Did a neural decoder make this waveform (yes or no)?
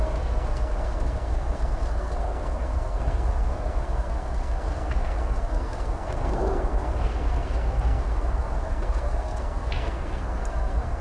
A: yes